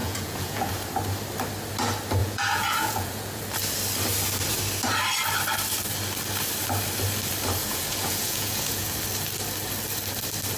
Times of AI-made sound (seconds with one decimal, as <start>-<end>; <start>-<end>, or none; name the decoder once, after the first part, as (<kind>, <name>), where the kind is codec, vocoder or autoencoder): 0.0-0.7 (vocoder, Vocos); 2.2-3.4; 7.6-8.9